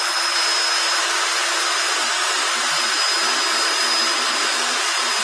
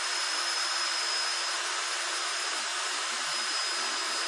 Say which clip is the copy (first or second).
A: second